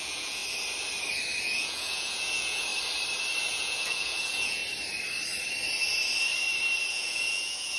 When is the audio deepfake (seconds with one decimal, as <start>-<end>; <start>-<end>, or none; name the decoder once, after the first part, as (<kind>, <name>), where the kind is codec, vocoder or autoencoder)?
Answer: 0.0-0.4 (vocoder, Vocos); 1.4-2.7; 3.5-4.6; 6.9-7.8

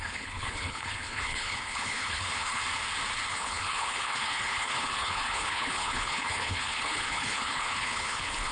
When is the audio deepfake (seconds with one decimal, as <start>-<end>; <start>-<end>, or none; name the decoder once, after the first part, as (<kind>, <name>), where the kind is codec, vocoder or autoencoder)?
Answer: 0.0-2.6 (codec, HILCodec); 3.3-8.5